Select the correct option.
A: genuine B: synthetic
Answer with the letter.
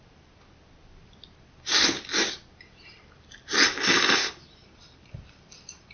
A